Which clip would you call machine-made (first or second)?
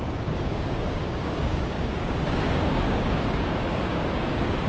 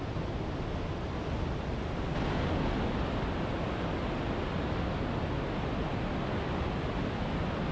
first